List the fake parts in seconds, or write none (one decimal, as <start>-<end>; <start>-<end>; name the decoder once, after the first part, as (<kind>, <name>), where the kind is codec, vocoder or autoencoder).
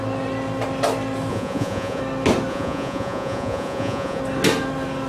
1.3-2.0 (vocoder, Vocos); 2.5-4.2